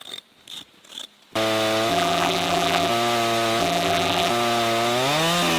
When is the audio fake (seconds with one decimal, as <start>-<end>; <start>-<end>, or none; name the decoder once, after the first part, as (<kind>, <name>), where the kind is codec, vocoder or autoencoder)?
1.9-2.9 (vocoder, BigVGAN v2); 3.6-4.3